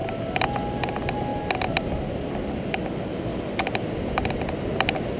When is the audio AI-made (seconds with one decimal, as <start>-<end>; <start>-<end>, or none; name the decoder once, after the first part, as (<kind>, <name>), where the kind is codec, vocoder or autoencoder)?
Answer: none